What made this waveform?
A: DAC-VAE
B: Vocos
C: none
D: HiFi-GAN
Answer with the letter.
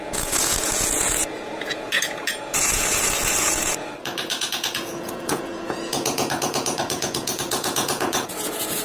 B